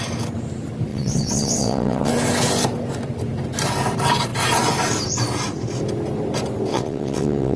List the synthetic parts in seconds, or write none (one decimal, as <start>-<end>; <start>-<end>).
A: 0.9-2.1; 6.7-7.6